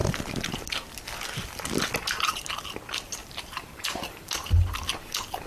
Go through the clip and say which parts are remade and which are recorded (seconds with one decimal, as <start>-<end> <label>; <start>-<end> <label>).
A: 0.0-3.2 recorded; 3.2-4.5 remade; 4.5-5.5 recorded